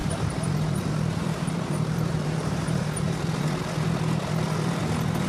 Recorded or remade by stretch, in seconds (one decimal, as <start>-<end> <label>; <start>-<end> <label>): 0.0-3.2 remade; 3.2-5.3 recorded